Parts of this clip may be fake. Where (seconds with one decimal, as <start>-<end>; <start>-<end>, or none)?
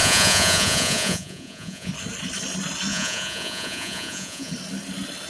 0.0-1.9; 2.9-4.5